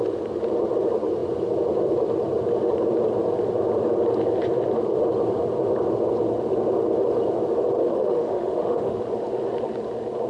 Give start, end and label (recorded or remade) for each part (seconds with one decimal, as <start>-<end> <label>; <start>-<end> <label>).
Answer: 0.0-7.8 recorded; 7.8-9.0 remade; 9.0-10.3 recorded